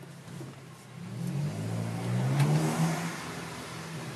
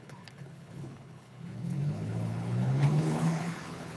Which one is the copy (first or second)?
second